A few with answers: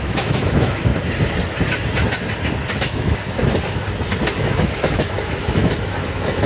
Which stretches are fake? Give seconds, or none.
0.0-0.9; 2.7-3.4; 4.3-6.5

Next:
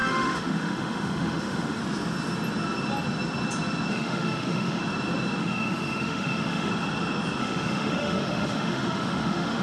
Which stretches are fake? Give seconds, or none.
0.0-1.8; 3.9-4.8; 5.4-6.7; 7.4-9.6

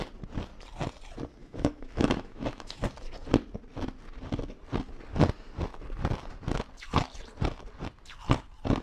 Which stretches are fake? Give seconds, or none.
1.4-2.8

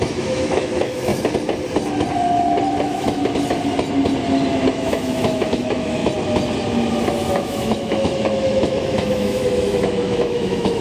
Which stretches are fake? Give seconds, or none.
0.0-1.1; 2.8-3.2; 4.7-6.0; 7.3-10.8

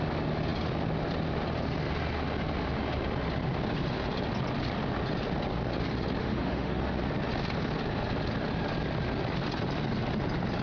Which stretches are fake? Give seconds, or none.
6.2-6.8